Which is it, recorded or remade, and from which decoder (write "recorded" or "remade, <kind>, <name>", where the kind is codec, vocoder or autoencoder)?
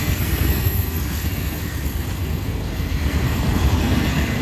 remade, codec, SNAC